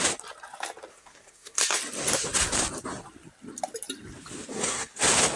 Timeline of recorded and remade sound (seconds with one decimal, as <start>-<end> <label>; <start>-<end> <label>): 0.0-0.9 recorded; 0.9-1.8 remade; 1.8-4.5 recorded; 4.5-5.0 remade; 5.0-5.4 recorded